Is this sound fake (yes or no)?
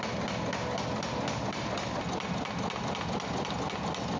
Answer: no